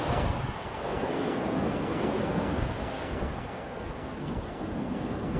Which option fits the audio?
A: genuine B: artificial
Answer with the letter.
B